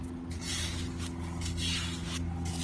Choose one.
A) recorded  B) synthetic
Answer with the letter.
A